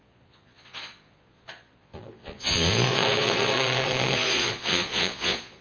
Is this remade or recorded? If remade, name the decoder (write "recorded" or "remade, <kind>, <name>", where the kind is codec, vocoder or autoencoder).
remade, vocoder, Vocos